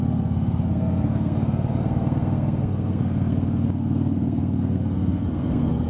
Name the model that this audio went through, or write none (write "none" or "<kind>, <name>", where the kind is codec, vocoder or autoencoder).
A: codec, SNAC